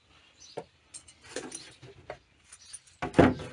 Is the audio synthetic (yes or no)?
no